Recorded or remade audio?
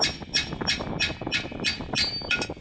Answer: recorded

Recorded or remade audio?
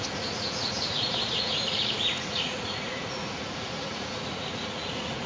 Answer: remade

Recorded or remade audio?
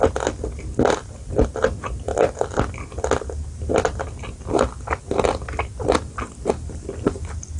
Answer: recorded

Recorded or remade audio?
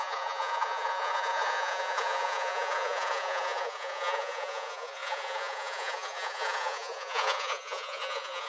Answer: remade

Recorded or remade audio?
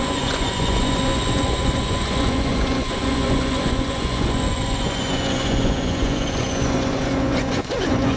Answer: remade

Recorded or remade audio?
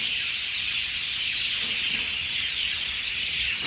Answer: recorded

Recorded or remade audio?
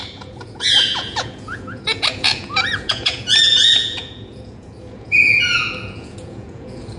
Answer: remade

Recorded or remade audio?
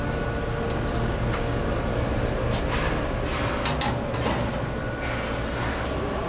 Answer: recorded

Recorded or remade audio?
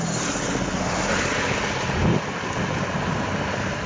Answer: recorded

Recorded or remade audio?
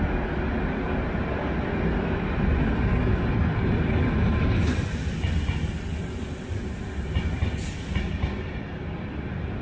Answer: recorded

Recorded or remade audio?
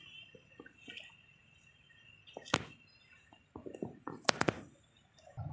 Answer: recorded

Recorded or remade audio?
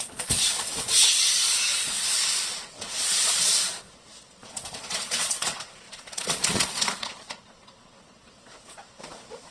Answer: remade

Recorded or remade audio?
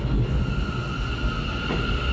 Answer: recorded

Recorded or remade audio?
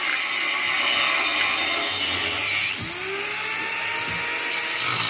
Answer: recorded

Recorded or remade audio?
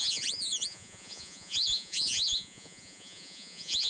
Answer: remade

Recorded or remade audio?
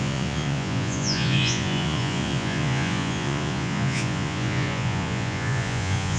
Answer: remade